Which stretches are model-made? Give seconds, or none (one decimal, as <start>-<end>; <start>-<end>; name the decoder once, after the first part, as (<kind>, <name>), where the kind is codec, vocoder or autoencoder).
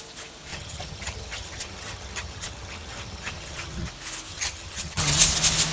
0.5-3.9 (vocoder, HiFi-GAN); 4.3-5.2